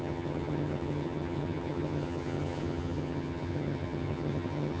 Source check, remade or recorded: remade